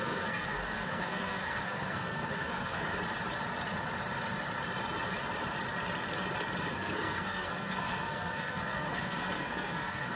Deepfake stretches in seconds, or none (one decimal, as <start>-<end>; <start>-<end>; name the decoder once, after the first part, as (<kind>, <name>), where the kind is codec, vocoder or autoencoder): 0.0-2.9 (codec, SNAC); 6.7-10.2